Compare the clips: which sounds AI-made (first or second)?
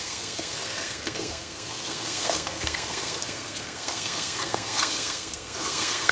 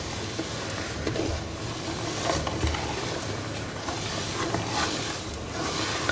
first